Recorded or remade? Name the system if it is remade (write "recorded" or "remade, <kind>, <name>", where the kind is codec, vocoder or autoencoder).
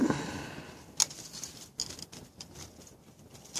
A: recorded